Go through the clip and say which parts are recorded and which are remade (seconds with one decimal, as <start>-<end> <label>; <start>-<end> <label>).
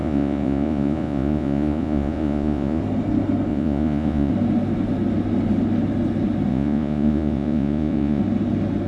0.0-2.8 remade; 2.8-3.5 recorded; 3.5-4.3 remade; 4.3-6.5 recorded; 6.5-8.2 remade; 8.2-8.9 recorded